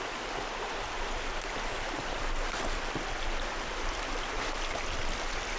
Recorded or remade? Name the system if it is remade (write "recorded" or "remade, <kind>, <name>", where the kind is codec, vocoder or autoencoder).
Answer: recorded